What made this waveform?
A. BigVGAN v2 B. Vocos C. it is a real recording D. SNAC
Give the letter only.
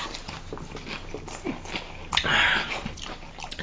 C